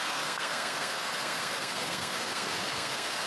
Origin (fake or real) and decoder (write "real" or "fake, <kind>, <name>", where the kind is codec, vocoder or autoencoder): fake, codec, SNAC